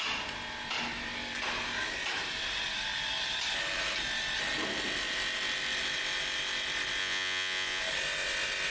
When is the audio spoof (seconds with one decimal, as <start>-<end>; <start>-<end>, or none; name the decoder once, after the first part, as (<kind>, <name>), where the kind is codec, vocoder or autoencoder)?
7.0-7.8 (vocoder, Vocos)